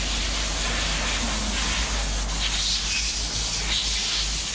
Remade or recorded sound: recorded